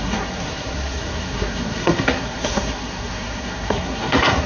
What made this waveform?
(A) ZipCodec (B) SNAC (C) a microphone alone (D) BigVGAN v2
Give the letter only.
B